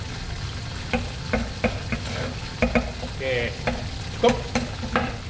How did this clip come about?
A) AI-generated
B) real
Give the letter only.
B